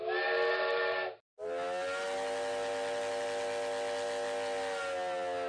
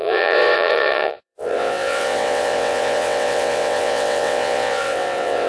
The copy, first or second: second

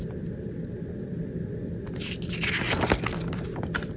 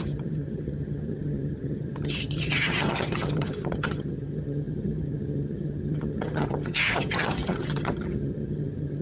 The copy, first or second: second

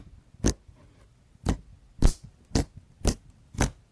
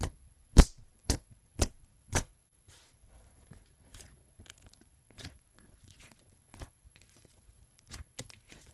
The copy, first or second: second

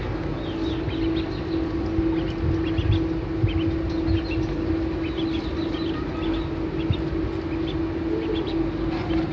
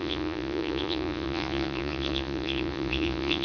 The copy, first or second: second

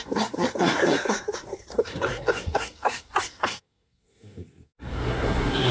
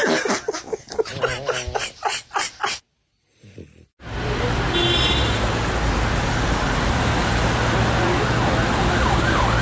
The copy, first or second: first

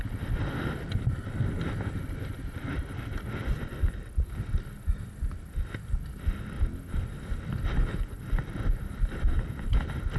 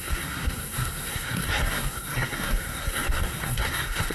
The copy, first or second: second